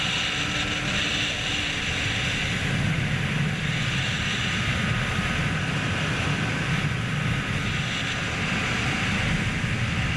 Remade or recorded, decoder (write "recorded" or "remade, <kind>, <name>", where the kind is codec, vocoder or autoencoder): recorded